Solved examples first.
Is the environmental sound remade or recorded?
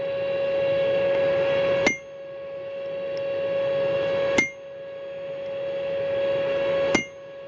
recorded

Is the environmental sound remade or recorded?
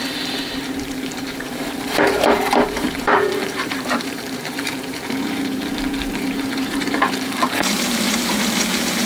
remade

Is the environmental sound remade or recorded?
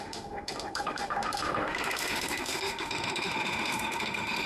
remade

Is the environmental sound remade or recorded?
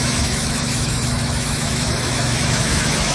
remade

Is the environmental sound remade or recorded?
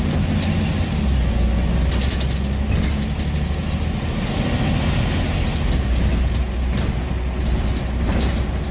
recorded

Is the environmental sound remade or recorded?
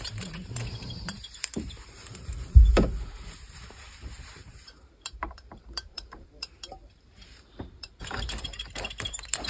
remade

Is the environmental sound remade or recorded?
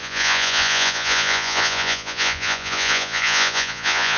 remade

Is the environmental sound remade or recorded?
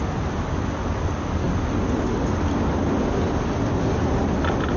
recorded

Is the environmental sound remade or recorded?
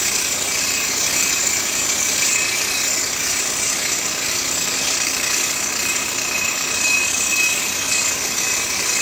remade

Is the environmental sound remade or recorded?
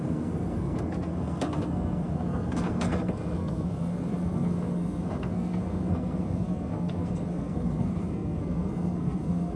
remade